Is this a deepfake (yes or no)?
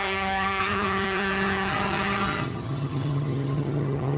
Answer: yes